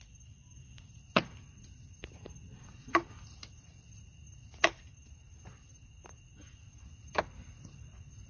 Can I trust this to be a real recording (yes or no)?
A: yes